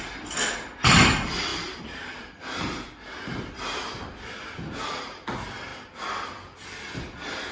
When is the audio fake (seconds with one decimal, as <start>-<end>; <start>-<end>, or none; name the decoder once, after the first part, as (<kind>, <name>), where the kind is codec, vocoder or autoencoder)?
0.0-1.5 (vocoder, BigVGAN v2); 2.2-5.7; 6.3-7.5